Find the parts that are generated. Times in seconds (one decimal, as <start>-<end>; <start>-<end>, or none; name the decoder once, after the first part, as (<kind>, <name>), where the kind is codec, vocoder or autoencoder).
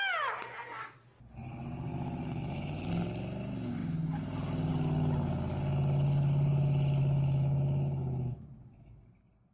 1.9-2.9 (autoencoder, DAC-VAE); 7.0-9.0